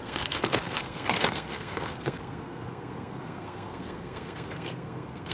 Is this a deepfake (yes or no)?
yes